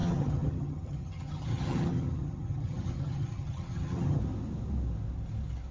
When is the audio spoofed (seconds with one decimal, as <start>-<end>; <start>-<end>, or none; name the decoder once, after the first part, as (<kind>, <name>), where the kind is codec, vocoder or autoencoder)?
0.0-4.2 (vocoder, HiFi-GAN)